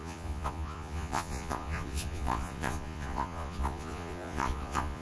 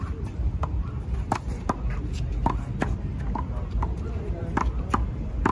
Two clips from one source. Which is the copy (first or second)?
first